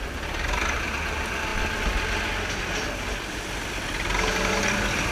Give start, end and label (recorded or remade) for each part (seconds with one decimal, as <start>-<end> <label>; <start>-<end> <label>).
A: 0.0-5.1 recorded